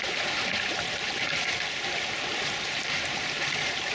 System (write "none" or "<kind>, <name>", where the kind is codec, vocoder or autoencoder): vocoder, BigVGAN v2